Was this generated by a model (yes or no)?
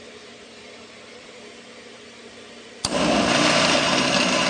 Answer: yes